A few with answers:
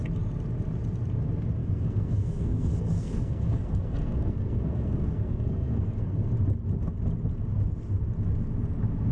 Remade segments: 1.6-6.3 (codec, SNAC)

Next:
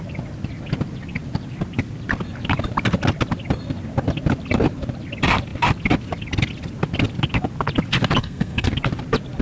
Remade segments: 8.2-8.7 (codec, SNAC)

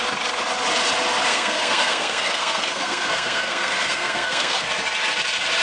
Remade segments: 1.3-4.7 (codec, SNAC)

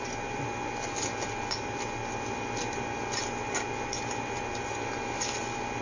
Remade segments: none

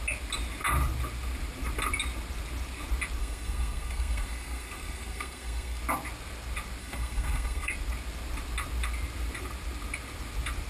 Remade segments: 3.2-5.8 (codec, SNAC); 6.8-7.7